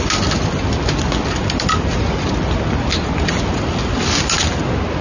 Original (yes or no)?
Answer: yes